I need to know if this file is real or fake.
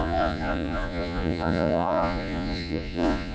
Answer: fake